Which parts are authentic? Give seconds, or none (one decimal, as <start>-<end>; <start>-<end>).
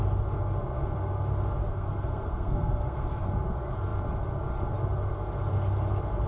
0.0-1.6; 3.3-6.3